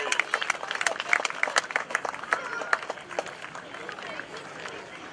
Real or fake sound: real